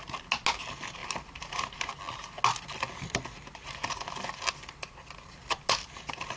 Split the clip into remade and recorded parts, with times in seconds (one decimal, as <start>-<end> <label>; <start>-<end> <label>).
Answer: 0.0-6.4 recorded